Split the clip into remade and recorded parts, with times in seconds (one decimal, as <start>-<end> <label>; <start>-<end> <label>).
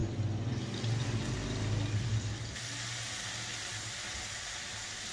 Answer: 0.0-5.1 recorded